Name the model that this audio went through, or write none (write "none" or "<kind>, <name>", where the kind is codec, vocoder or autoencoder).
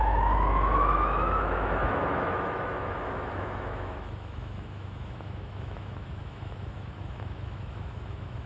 autoencoder, DAC-VAE